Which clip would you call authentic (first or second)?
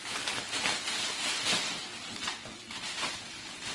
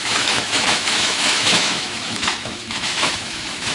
first